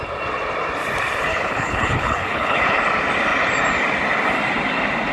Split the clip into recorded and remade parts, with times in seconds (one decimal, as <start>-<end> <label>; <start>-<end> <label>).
0.0-1.3 recorded; 1.3-2.8 remade; 2.8-5.1 recorded